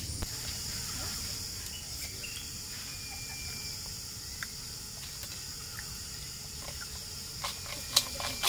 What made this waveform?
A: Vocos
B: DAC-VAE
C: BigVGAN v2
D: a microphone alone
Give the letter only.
D